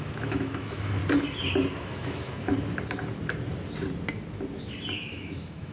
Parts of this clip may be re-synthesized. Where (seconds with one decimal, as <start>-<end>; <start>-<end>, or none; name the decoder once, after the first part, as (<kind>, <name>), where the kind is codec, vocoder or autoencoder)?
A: 0.0-1.0 (autoencoder, DAC-VAE); 1.8-2.5; 5.0-5.7